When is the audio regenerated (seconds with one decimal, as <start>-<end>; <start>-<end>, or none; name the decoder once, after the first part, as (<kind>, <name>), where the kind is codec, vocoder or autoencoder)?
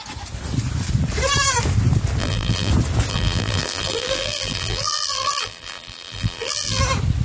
2.2-2.7 (vocoder, BigVGAN v2); 3.1-6.8